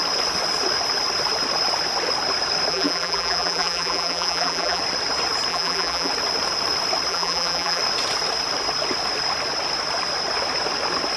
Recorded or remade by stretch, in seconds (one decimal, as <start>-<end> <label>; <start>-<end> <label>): 0.0-2.7 recorded; 2.7-4.8 remade; 4.8-5.5 recorded; 5.5-6.1 remade; 6.1-7.1 recorded; 7.1-7.8 remade; 7.8-11.2 recorded